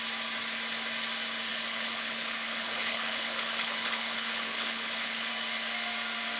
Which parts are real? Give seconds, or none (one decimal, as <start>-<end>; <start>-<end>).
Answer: 0.0-1.5; 5.3-6.4